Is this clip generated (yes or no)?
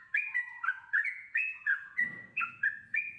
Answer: yes